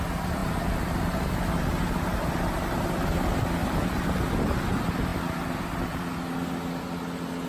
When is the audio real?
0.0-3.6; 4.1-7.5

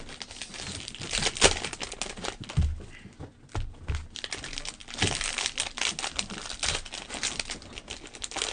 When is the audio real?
0.0-8.5

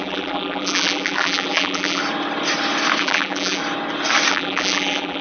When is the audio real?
2.0-3.0; 3.6-4.3

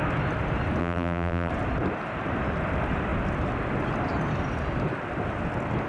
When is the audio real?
0.0-0.8; 1.5-5.9